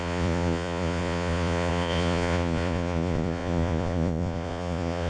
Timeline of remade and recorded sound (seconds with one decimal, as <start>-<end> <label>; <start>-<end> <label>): 0.0-5.1 remade